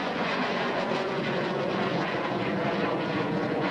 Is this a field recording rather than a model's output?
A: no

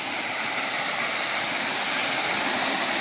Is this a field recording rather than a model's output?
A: yes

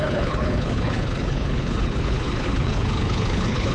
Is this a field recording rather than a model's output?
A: no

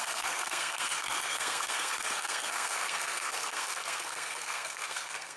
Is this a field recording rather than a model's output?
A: no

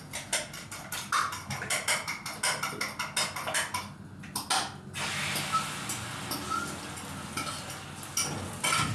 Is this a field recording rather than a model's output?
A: yes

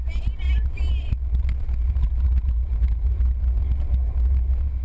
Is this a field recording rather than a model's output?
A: yes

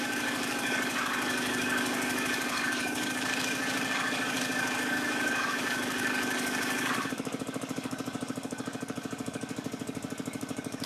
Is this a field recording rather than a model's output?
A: no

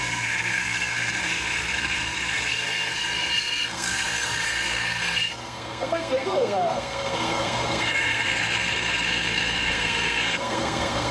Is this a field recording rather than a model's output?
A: no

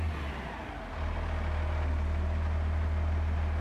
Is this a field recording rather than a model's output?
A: yes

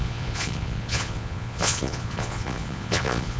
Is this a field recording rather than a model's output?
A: no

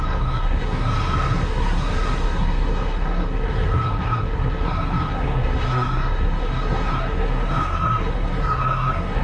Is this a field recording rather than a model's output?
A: no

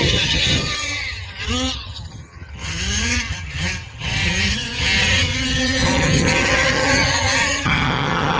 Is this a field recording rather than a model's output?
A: no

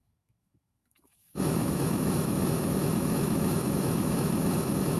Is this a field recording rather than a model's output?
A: no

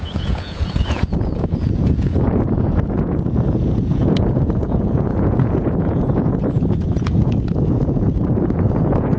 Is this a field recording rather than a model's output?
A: no